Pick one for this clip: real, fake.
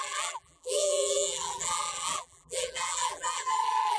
fake